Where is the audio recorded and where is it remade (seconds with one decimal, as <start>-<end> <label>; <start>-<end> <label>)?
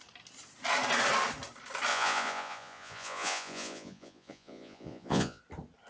0.0-1.9 recorded; 1.9-5.4 remade; 5.4-5.9 recorded